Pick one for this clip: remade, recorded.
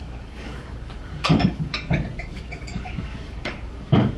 remade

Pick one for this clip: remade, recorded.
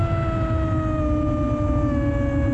recorded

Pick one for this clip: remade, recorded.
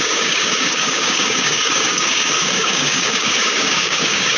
remade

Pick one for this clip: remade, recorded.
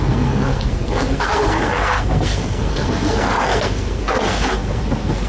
remade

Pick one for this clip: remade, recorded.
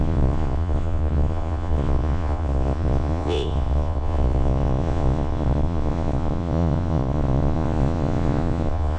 remade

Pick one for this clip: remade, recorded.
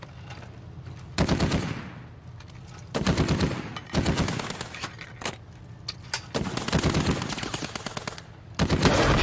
recorded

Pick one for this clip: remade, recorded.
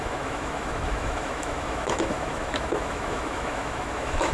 remade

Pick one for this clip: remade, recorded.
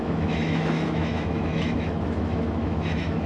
remade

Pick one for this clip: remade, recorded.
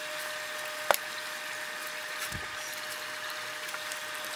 recorded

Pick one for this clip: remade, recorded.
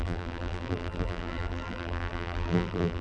remade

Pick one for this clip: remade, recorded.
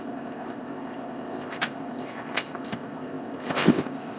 remade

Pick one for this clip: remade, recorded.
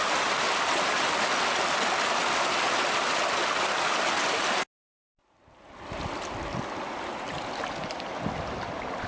recorded